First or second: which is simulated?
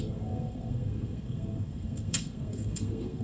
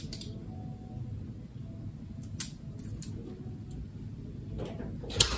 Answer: first